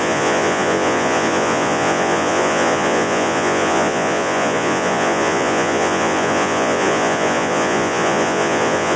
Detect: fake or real fake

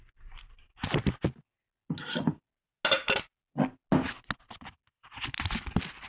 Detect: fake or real real